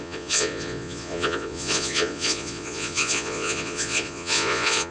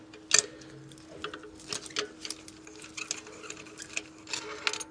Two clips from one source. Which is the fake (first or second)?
first